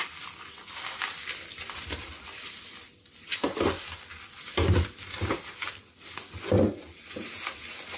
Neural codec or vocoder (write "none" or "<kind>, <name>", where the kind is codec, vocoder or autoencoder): none